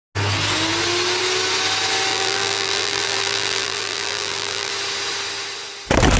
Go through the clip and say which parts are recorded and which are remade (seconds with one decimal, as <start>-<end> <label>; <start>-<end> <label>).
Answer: 0.0-2.1 recorded; 2.1-4.7 remade; 4.7-6.2 recorded